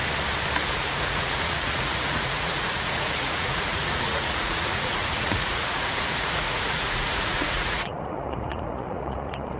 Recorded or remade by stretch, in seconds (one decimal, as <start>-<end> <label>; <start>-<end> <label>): 0.0-0.7 recorded; 0.7-9.6 remade